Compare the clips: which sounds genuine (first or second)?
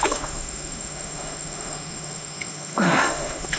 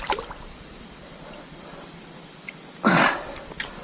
second